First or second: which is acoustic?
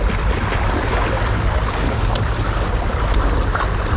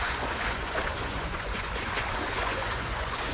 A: first